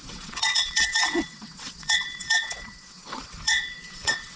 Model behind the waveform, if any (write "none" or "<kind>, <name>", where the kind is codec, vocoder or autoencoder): vocoder, WaveNeXt